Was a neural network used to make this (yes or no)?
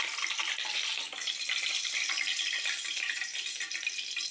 no